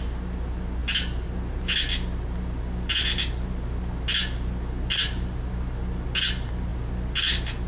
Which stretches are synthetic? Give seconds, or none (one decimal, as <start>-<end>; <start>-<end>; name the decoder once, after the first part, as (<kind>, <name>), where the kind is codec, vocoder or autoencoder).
none